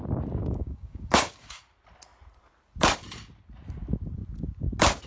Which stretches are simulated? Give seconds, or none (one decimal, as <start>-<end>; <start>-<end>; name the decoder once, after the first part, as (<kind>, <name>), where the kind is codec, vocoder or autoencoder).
0.4-1.6 (codec, DAC)